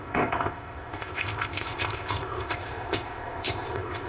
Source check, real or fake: fake